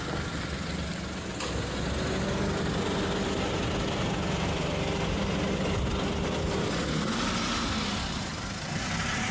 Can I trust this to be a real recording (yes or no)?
yes